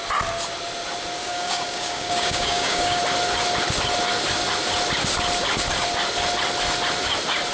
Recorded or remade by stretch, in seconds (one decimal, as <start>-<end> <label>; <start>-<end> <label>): 0.0-1.2 recorded; 1.2-3.0 remade; 3.0-7.5 recorded